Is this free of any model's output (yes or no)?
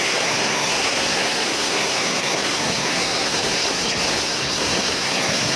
no